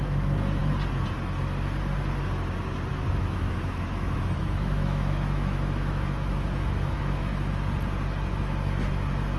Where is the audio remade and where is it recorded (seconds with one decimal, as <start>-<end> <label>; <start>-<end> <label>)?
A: 0.0-0.6 remade; 0.6-2.9 recorded; 2.9-7.3 remade; 7.3-9.4 recorded